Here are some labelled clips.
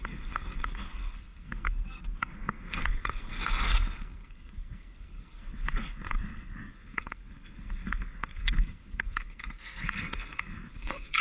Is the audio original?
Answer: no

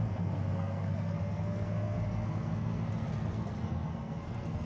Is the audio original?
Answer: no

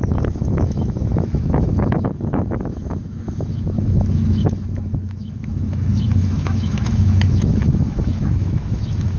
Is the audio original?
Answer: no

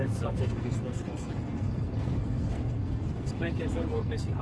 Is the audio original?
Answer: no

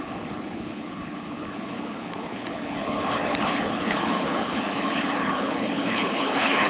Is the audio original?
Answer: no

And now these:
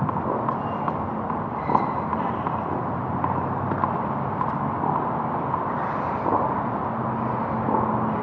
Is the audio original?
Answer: yes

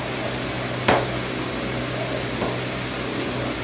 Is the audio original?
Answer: yes